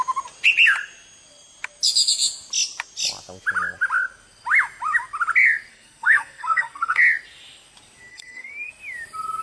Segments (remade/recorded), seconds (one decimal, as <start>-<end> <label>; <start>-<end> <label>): 0.0-5.7 recorded; 5.7-7.0 remade; 7.0-8.1 recorded; 8.1-8.7 remade; 8.7-9.4 recorded